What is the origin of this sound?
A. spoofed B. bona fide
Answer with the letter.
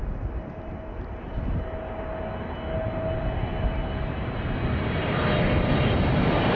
B